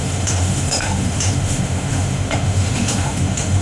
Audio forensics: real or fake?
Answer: fake